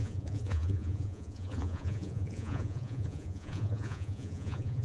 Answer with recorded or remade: remade